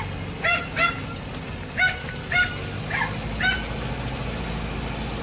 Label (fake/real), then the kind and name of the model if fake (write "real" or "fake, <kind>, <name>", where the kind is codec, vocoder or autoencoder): real